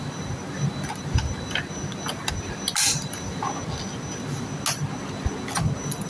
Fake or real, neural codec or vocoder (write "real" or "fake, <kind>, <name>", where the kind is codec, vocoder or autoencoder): real